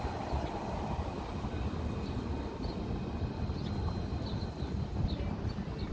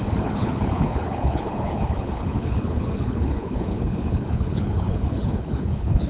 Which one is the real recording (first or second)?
first